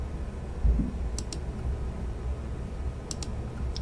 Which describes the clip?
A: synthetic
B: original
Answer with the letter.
B